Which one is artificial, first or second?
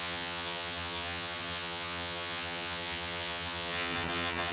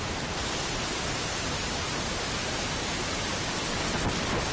first